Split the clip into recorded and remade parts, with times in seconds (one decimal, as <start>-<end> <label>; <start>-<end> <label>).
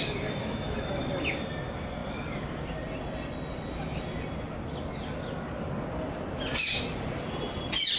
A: 0.0-0.4 recorded; 0.4-1.0 remade; 1.0-8.0 recorded